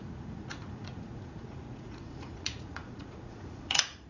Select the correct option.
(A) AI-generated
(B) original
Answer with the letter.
A